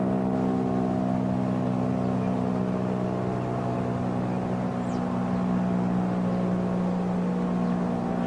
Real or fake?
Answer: real